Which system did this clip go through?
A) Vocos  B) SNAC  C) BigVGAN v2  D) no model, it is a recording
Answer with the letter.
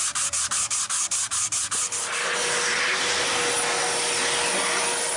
D